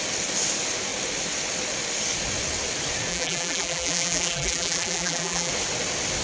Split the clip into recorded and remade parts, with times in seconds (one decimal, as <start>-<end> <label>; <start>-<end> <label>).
0.0-3.1 recorded; 3.1-5.5 remade; 5.5-6.2 recorded